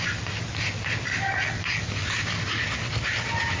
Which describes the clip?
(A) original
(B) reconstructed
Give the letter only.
A